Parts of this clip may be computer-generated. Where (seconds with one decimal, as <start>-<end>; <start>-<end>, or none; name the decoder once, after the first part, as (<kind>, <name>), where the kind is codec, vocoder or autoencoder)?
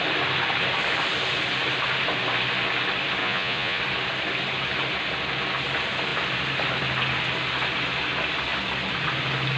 3.2-3.8 (vocoder, Vocos)